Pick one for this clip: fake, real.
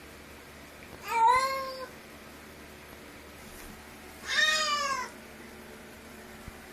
fake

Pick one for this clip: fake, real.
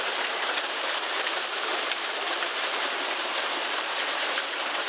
fake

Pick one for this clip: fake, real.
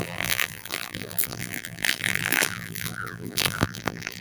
fake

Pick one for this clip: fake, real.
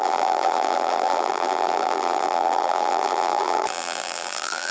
fake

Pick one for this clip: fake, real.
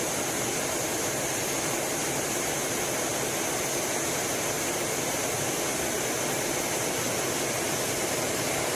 fake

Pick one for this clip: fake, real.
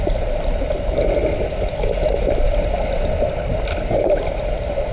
real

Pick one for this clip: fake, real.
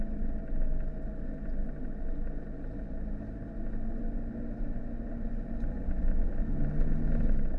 real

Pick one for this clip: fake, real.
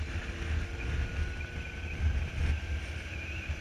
real